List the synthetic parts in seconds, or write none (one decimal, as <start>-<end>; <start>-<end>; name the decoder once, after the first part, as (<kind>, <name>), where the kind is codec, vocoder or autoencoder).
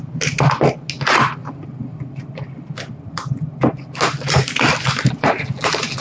1.4-3.9 (vocoder, BigVGAN v2)